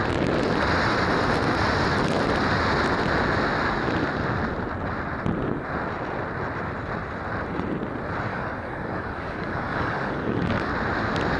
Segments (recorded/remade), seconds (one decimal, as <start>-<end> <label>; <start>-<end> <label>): 0.0-8.3 recorded; 8.3-10.7 remade; 10.7-11.4 recorded